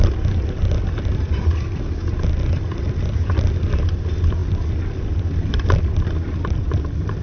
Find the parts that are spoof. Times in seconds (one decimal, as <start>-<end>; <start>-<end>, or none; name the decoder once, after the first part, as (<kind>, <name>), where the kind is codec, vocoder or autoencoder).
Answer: none